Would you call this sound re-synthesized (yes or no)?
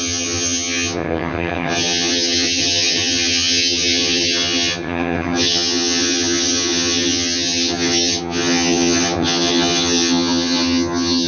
yes